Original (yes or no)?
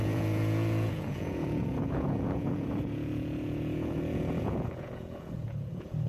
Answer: no